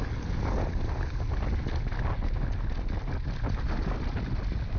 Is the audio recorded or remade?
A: recorded